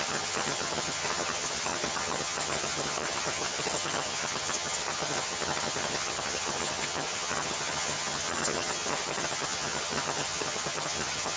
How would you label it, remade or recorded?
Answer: remade